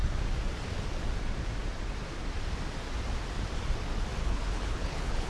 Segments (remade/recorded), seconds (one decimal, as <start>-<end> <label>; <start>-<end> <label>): 0.0-4.2 recorded; 4.2-5.3 remade